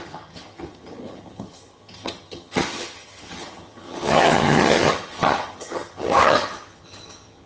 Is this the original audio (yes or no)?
no